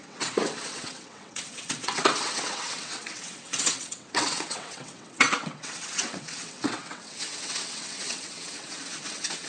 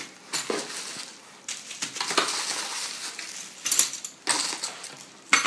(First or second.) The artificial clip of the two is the first